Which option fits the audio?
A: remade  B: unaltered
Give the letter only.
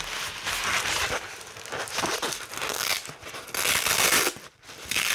B